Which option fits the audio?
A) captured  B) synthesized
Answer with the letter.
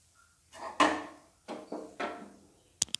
A